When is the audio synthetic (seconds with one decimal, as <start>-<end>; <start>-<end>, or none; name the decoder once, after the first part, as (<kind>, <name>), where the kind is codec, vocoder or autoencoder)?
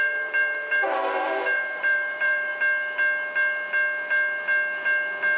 0.0-2.5 (vocoder, BigVGAN v2)